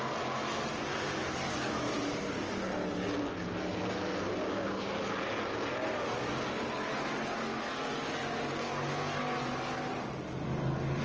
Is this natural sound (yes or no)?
yes